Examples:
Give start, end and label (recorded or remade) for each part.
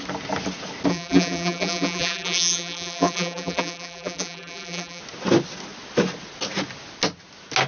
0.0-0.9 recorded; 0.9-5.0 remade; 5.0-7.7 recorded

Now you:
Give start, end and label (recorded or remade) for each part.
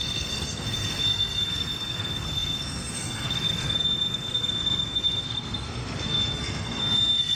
0.0-7.3 remade